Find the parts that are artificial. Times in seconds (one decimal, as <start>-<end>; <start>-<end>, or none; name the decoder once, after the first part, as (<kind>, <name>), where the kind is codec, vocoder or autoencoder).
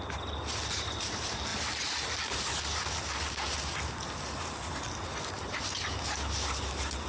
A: none